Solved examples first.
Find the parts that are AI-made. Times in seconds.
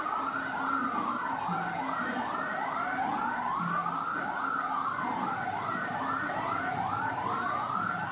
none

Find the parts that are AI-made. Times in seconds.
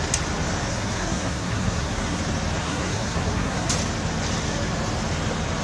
0.7-2.2 (codec, SNAC); 2.6-3.7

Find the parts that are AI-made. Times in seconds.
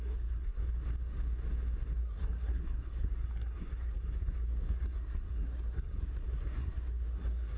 0.0-0.6 (codec, SNAC); 2.0-7.6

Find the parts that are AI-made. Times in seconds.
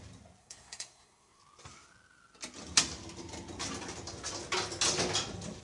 0.4-1.4 (codec, SNAC)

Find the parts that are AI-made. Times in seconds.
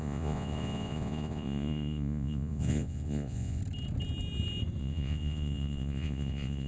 0.0-3.6 (vocoder, Vocos); 4.8-6.7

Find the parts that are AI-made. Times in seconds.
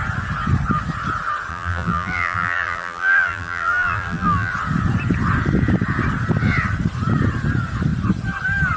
1.5-4.5 (vocoder, BigVGAN v2)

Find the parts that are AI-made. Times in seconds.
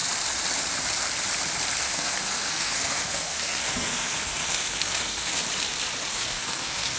1.8-5.4 (codec, SNAC); 6.1-7.0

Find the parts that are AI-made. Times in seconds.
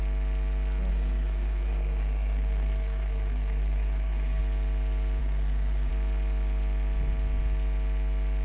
0.9-4.4 (codec, SNAC); 5.2-5.9